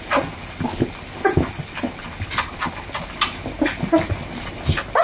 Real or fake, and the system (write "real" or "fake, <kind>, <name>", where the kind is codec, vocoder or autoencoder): real